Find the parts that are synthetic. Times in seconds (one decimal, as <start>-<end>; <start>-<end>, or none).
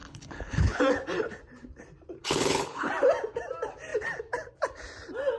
0.0-0.8; 2.2-2.9